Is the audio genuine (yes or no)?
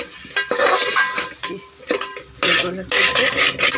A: yes